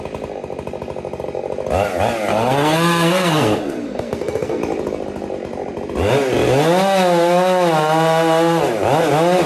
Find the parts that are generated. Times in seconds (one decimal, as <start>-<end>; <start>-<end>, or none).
2.3-4.6